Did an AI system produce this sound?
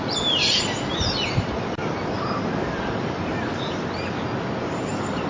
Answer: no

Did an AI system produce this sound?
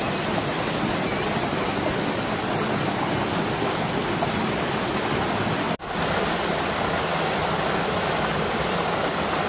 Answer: no